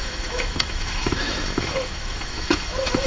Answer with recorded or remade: remade